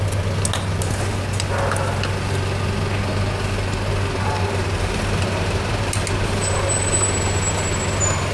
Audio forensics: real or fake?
real